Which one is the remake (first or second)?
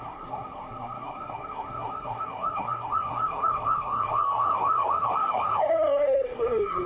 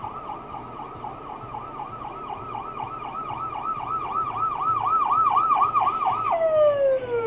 first